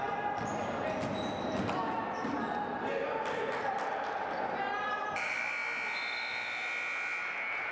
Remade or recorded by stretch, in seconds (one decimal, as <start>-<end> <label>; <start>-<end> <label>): 0.0-7.7 recorded